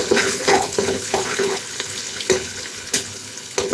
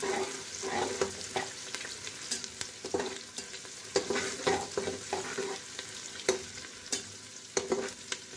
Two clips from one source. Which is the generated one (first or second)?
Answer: first